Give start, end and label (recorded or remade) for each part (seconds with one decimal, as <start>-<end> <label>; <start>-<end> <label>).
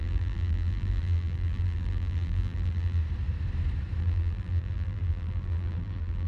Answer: 0.0-3.0 remade; 3.0-4.0 recorded; 4.0-6.3 remade